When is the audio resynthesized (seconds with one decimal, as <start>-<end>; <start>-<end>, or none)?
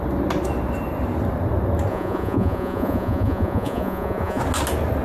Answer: 1.9-4.4